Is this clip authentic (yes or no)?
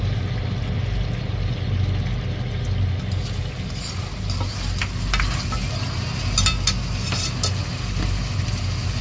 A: yes